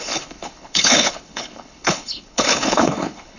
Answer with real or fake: fake